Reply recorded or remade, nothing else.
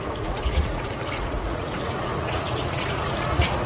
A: remade